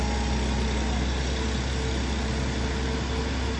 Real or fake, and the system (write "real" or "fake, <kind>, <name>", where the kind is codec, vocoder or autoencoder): real